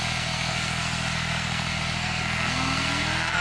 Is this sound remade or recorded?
remade